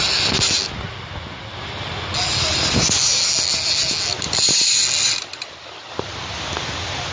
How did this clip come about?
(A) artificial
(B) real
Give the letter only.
B